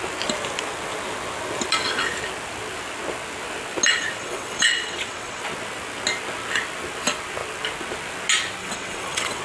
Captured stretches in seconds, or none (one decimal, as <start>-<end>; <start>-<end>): 0.0-4.2; 5.4-8.6